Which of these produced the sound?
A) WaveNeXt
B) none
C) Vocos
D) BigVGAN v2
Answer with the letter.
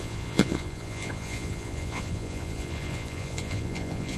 C